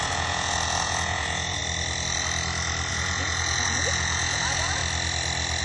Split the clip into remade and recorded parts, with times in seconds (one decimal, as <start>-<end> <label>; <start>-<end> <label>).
0.0-1.6 remade; 1.6-2.9 recorded; 2.9-4.8 remade; 4.8-5.6 recorded